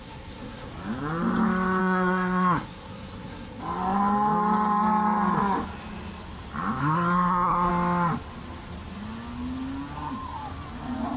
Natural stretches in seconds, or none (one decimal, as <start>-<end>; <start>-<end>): 0.7-1.8; 3.6-6.8; 7.7-11.2